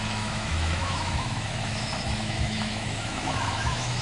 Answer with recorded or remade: remade